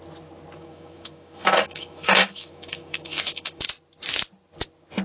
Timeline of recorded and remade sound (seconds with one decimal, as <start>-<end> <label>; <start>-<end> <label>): 0.0-0.6 recorded; 0.6-3.6 remade; 3.6-5.0 recorded